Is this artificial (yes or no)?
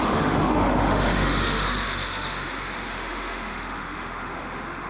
yes